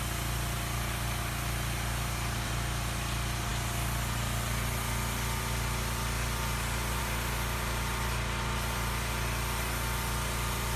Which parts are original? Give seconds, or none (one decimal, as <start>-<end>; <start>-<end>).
0.0-10.8